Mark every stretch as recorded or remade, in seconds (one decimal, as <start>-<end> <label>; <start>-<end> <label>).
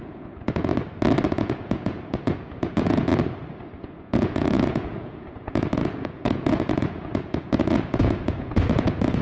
0.0-0.7 remade; 0.7-1.3 recorded; 1.3-3.1 remade; 3.1-3.8 recorded; 3.8-9.2 remade